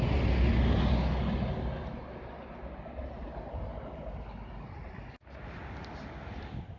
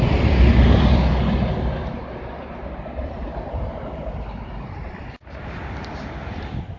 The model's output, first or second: second